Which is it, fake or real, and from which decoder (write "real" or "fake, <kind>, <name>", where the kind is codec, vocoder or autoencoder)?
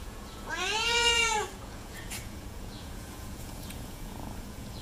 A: fake, vocoder, Vocos